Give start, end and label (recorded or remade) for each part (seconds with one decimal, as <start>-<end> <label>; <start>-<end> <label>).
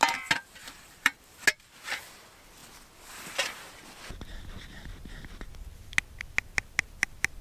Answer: 0.0-0.6 recorded; 0.6-1.2 remade; 1.2-7.4 recorded